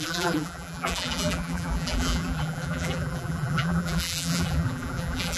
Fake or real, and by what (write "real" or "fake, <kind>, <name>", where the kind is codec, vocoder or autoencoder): fake, vocoder, BigVGAN v2